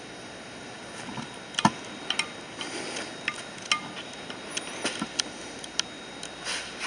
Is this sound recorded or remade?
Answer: recorded